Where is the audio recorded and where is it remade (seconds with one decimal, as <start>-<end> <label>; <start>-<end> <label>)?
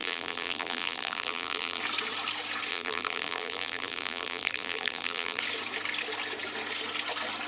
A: 0.0-1.8 remade; 1.8-2.7 recorded; 2.7-5.4 remade; 5.4-7.5 recorded